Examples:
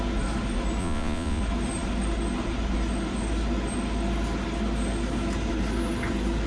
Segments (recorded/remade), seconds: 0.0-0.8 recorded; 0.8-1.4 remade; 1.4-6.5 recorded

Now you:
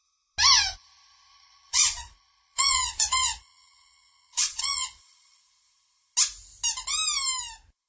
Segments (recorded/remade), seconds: 0.0-1.3 recorded; 1.3-5.4 remade; 5.4-7.9 recorded

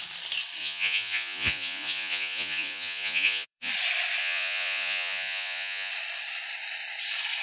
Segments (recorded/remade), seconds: 0.0-0.6 recorded; 0.6-3.7 remade; 3.7-4.2 recorded; 4.2-5.9 remade; 5.9-7.4 recorded

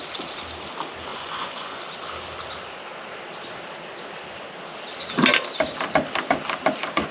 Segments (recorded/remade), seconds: 0.0-1.1 recorded; 1.1-1.8 remade; 1.8-7.1 recorded

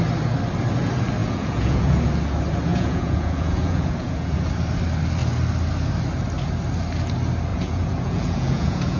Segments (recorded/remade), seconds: 0.0-1.2 recorded; 1.2-2.1 remade; 2.1-2.7 recorded; 2.7-4.4 remade; 4.4-7.5 recorded; 7.5-9.0 remade

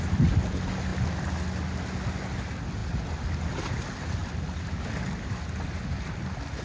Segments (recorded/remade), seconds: 0.0-6.6 recorded